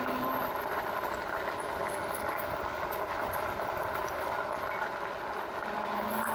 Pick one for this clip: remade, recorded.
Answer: recorded